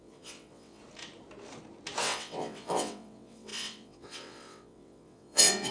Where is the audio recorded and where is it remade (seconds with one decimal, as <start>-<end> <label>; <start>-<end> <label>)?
0.0-0.8 remade; 0.8-2.0 recorded; 2.0-5.7 remade